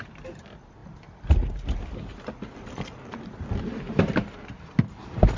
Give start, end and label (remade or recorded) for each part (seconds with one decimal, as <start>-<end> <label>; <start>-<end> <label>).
0.0-5.4 recorded